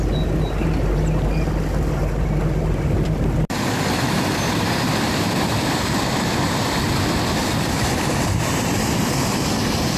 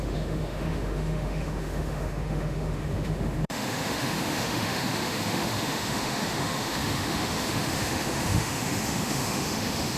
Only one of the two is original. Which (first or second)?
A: first